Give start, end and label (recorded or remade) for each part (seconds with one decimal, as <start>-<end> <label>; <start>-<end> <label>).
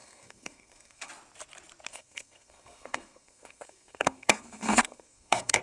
0.0-1.1 remade; 1.1-1.9 recorded; 1.9-5.6 remade